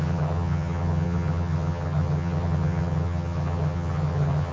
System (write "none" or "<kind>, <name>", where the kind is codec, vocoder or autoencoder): vocoder, HiFi-GAN